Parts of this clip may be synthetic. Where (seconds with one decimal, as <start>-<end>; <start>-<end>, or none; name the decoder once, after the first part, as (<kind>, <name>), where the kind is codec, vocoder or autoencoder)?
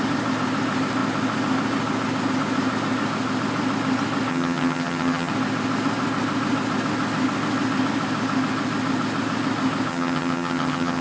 4.3-5.3 (vocoder, HiFi-GAN); 9.9-11.0